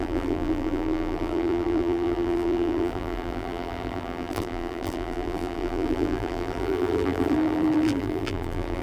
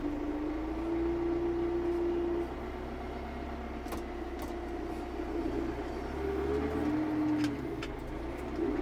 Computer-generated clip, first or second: first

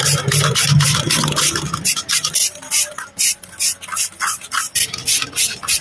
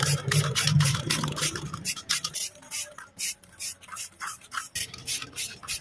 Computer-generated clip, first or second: second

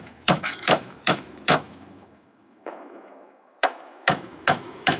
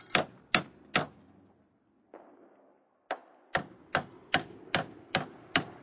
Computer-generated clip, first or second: first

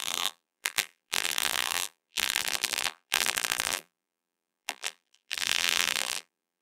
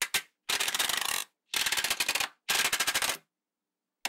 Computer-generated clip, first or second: first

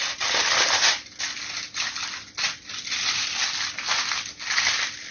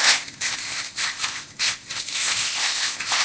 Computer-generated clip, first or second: second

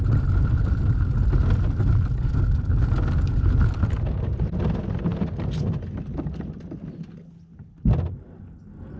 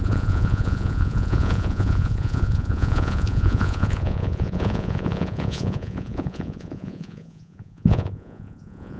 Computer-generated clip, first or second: second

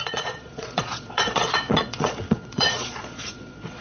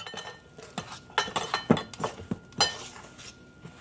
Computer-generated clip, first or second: first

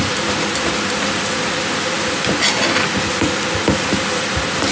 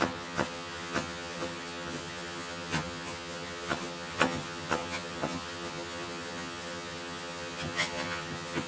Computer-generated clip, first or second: second